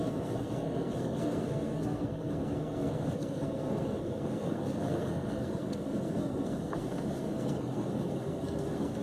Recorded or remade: remade